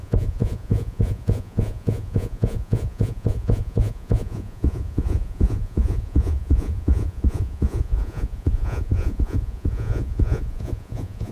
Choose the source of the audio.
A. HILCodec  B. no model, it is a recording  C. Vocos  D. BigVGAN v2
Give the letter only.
C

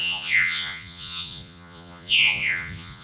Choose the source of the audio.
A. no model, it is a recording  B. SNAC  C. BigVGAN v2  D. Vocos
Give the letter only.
D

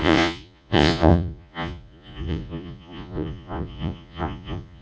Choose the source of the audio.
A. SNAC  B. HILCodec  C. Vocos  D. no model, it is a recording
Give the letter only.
C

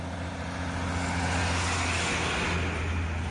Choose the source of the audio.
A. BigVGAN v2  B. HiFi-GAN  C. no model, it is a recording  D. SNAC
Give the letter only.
C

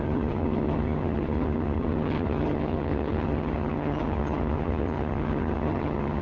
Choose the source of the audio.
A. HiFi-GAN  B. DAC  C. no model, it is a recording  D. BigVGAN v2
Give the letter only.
A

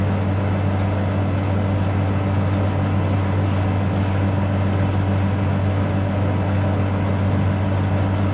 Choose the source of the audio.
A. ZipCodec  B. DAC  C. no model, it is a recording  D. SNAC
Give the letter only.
C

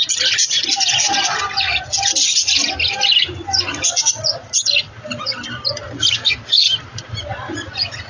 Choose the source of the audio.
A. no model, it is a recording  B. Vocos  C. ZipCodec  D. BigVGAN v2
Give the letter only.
A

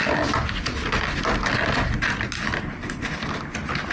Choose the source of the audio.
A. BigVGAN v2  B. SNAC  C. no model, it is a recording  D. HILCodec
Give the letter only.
C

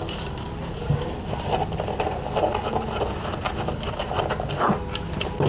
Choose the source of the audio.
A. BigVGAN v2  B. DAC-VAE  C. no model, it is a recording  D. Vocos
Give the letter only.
C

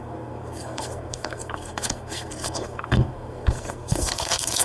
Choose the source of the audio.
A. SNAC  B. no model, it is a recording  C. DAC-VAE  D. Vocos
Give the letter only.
A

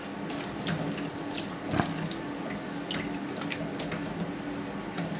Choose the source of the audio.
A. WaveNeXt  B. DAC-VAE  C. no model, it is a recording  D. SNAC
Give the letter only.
C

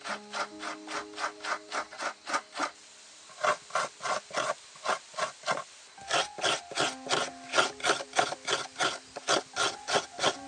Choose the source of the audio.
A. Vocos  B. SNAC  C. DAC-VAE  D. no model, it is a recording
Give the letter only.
D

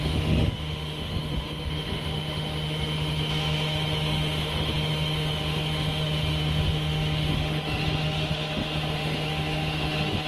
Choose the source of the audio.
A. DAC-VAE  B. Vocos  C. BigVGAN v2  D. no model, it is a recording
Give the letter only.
A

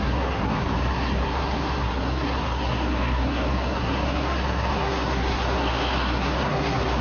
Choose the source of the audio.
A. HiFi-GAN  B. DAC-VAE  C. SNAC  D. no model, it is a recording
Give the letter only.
C